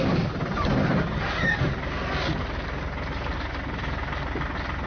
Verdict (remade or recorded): recorded